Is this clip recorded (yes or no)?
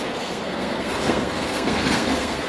no